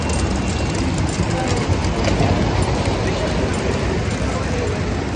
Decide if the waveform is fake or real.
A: real